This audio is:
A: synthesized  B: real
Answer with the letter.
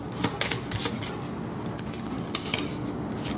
B